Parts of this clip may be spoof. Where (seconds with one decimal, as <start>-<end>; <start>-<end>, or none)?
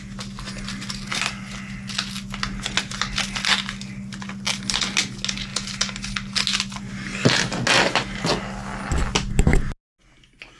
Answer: none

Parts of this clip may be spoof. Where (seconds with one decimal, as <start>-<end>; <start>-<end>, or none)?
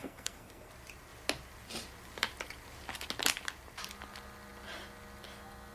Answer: 0.0-0.7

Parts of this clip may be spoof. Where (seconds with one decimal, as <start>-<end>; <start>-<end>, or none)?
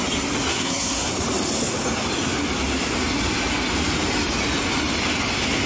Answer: 0.5-1.1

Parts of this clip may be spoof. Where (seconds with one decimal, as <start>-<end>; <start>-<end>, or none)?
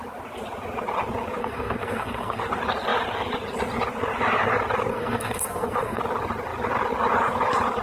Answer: 1.4-2.4; 4.9-6.0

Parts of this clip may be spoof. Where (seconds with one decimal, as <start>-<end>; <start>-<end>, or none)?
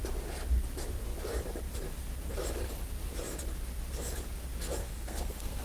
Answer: 4.8-5.6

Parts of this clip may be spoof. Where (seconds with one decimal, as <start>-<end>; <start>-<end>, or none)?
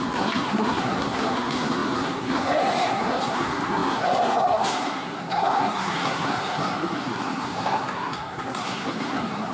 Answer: 0.0-9.5